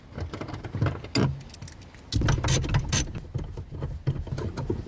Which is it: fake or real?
real